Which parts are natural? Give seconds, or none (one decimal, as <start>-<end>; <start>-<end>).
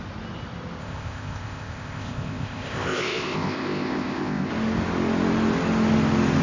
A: 0.0-0.8; 4.5-6.4